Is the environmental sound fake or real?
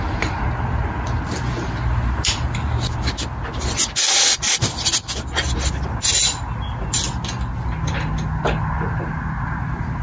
real